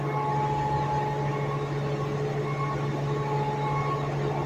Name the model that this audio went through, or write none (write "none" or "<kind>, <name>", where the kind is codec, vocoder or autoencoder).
none